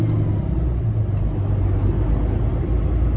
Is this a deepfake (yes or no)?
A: no